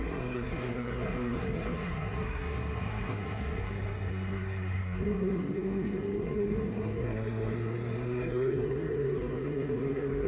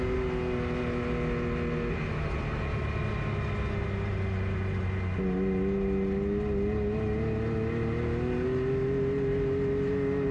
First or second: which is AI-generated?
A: first